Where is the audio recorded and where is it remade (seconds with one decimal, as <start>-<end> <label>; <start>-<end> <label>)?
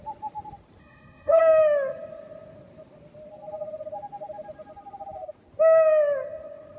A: 0.0-0.8 recorded; 0.8-1.4 remade; 1.4-6.8 recorded